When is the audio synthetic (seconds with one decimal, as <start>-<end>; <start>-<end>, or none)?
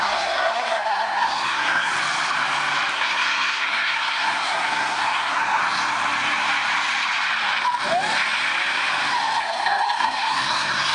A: 0.0-1.9; 2.9-5.6; 9.4-10.9